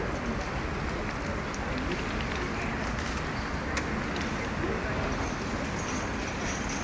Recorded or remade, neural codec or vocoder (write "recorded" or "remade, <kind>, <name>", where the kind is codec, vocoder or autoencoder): recorded